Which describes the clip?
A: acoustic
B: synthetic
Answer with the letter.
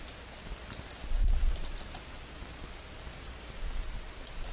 A